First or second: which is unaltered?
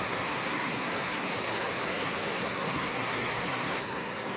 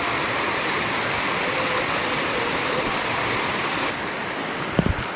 second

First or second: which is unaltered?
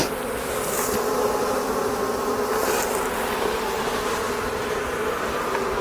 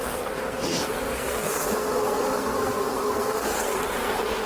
first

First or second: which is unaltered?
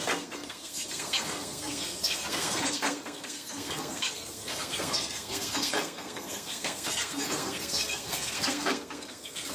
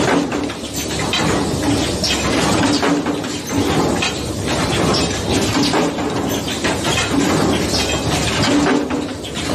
second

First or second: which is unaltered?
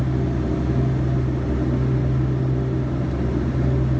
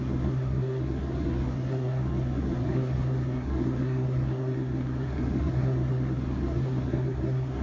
first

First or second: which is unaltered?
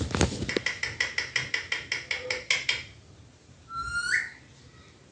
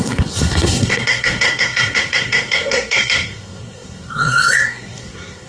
first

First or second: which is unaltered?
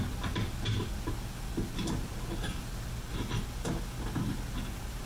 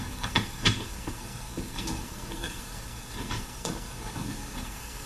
first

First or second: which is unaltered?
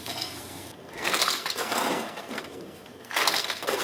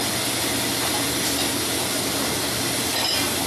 second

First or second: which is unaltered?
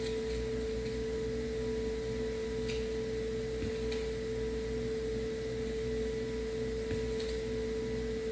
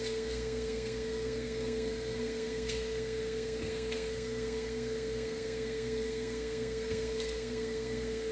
first